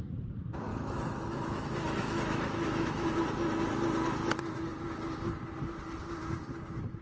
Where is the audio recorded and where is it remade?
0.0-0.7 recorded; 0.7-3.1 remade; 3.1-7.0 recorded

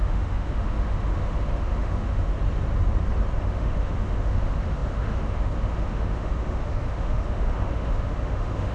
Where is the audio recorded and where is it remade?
0.0-2.3 remade; 2.3-3.4 recorded; 3.4-8.7 remade

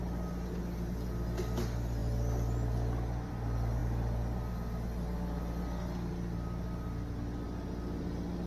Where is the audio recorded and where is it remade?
0.0-8.5 recorded

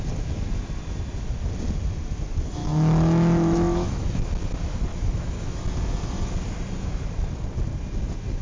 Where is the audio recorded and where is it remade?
0.0-2.6 recorded; 2.6-4.3 remade; 4.3-4.9 recorded; 4.9-5.6 remade; 5.6-8.4 recorded

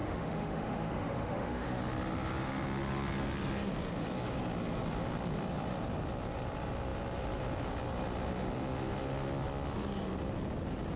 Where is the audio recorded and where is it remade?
0.0-1.8 remade; 1.8-11.0 recorded

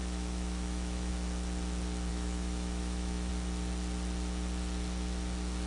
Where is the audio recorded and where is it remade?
0.0-1.1 remade; 1.1-2.1 recorded; 2.1-3.3 remade; 3.3-5.7 recorded

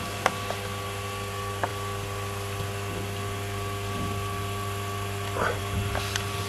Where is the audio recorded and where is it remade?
0.0-6.5 recorded

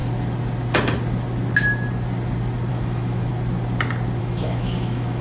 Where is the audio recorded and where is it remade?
0.0-2.7 recorded; 2.7-3.3 remade; 3.3-4.2 recorded; 4.2-5.2 remade